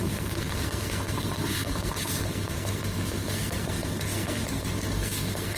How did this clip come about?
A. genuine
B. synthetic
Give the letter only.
B